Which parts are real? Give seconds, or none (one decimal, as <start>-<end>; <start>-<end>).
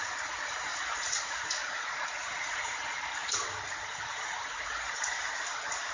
0.0-0.7; 2.7-5.9